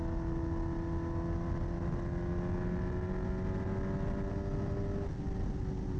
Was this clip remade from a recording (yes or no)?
no